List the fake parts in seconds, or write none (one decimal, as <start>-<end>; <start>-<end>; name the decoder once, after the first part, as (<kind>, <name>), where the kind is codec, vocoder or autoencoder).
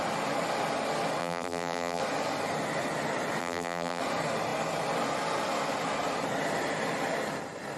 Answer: 1.2-2.0 (vocoder, BigVGAN v2); 3.4-4.0